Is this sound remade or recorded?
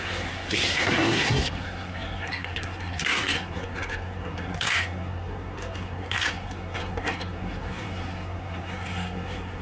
remade